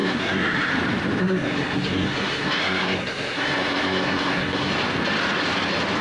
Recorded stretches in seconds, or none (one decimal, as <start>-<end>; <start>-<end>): 0.7-1.2; 4.7-6.0